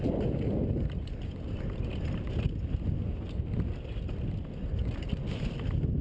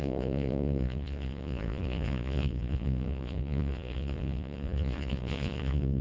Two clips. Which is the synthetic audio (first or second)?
second